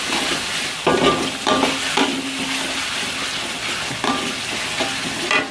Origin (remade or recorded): recorded